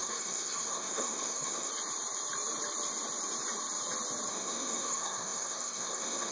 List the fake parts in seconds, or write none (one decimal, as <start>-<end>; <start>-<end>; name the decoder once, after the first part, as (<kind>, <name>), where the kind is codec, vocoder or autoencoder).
0.0-1.7 (codec, SNAC); 4.3-6.3